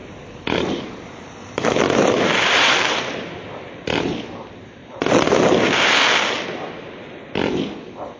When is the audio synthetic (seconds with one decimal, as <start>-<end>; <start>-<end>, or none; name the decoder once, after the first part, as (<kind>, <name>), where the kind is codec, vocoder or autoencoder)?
0.0-3.3 (vocoder, BigVGAN v2); 4.8-6.0

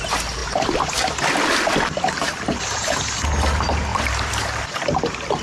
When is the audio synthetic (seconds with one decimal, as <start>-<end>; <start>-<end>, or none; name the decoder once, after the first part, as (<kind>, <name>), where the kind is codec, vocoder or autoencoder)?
3.9-4.8 (vocoder, BigVGAN v2)

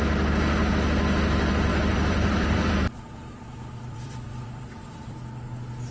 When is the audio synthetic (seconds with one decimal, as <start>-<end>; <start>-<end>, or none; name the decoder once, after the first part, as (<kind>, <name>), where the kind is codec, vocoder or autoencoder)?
1.7-5.2 (vocoder, BigVGAN v2)

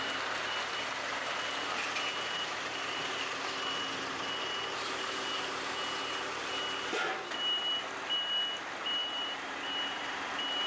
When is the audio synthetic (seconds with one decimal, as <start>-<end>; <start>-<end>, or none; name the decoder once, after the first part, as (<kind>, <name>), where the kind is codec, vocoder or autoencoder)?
9.0-10.7 (vocoder, BigVGAN v2)

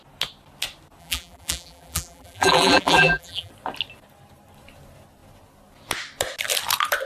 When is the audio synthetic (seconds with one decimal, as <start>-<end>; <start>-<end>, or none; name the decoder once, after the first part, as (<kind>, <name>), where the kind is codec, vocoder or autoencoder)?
1.0-3.5 (vocoder, BigVGAN v2)

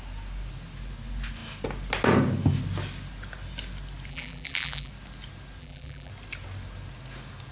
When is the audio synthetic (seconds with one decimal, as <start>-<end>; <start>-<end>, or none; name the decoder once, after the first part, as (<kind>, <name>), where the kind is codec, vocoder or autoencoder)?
4.1-4.9 (vocoder, BigVGAN v2); 5.6-6.1

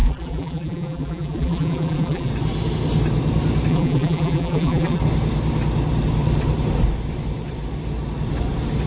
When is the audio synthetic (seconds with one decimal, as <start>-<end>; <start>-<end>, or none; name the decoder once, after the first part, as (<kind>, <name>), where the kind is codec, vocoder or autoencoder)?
0.0-2.3 (vocoder, BigVGAN v2); 3.7-5.0

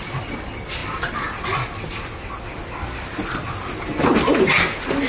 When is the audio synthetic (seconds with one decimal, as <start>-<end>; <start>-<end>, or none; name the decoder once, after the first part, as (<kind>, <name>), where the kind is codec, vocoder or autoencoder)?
none